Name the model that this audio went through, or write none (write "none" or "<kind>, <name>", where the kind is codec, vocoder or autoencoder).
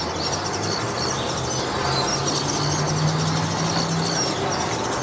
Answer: none